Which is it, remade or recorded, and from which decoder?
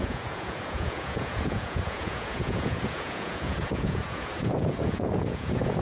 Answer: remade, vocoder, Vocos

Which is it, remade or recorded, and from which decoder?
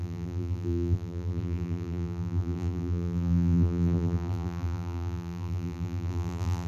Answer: remade, vocoder, BigVGAN v2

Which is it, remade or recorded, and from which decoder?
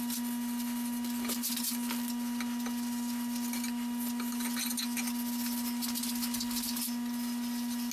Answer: recorded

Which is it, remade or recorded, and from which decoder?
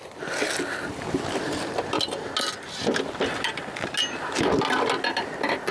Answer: recorded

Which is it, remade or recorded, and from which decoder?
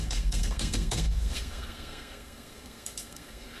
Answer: remade, codec, SNAC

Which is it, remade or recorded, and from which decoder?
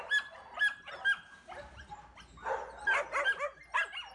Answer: recorded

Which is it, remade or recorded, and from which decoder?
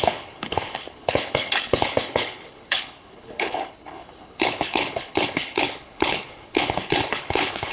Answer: remade, codec, HILCodec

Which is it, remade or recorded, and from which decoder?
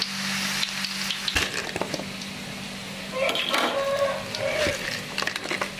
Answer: recorded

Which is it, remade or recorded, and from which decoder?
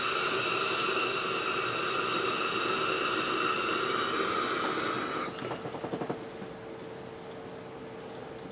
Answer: recorded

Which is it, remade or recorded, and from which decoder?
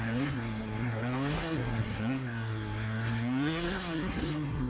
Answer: remade, codec, SNAC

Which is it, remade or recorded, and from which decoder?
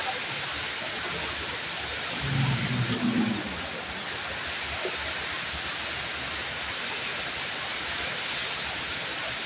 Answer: recorded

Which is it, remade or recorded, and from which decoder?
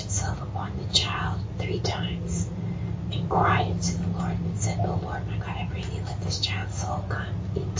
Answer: recorded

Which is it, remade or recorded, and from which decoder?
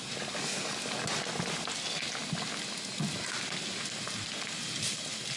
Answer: recorded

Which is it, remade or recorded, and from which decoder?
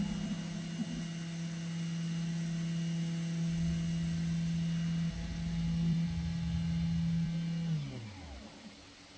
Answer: recorded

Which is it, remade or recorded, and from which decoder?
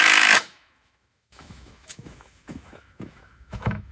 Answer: remade, autoencoder, DAC-VAE